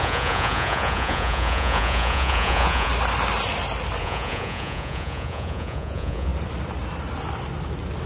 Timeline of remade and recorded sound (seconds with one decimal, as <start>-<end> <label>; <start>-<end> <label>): 0.0-2.9 remade; 2.9-4.0 recorded; 4.0-6.3 remade; 6.3-8.1 recorded